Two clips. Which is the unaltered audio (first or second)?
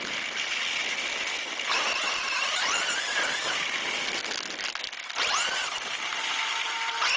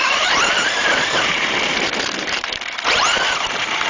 first